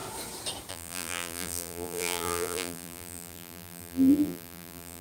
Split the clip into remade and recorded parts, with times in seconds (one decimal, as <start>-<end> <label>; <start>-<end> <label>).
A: 0.0-0.7 recorded; 0.7-5.0 remade